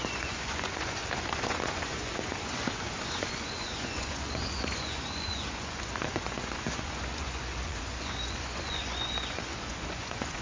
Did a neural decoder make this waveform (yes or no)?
yes